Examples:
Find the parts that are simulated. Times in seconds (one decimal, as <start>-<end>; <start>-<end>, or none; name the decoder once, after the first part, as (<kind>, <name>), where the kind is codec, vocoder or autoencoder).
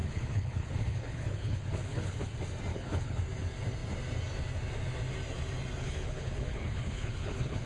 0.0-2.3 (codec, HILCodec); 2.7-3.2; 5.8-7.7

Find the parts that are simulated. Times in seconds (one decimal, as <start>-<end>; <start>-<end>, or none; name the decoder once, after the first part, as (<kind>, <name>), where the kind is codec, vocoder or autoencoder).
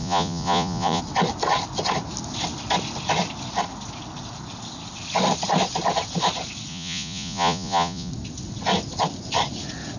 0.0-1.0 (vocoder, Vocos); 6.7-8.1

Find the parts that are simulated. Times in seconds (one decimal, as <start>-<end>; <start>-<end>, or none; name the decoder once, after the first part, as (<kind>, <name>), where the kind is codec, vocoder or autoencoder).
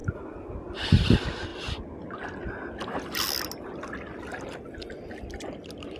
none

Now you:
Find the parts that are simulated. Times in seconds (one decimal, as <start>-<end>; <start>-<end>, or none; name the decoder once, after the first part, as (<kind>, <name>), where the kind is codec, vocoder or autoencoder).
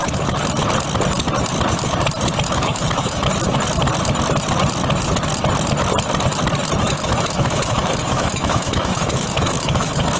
2.5-3.3 (autoencoder, DAC-VAE); 6.8-10.2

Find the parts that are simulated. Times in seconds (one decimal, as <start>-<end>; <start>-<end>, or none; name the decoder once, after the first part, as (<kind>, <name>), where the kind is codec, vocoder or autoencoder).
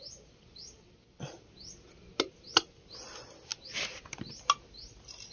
none